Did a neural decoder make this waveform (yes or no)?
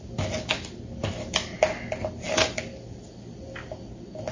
no